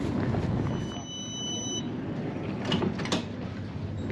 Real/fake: real